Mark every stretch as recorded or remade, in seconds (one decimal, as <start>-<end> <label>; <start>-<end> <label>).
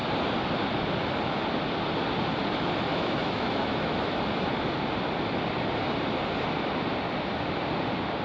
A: 0.0-2.9 recorded; 2.9-3.9 remade; 3.9-8.2 recorded